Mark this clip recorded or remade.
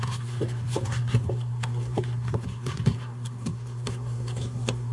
remade